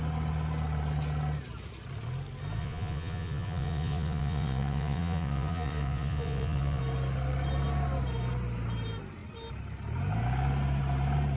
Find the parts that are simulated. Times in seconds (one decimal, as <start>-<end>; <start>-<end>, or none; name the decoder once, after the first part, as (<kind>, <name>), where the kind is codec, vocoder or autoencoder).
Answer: 2.6-6.8 (vocoder, Vocos)